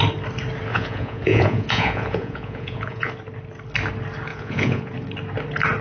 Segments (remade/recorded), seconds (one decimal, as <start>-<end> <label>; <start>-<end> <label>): 0.0-0.7 recorded; 0.7-3.1 remade; 3.1-4.3 recorded; 4.3-4.9 remade; 4.9-5.8 recorded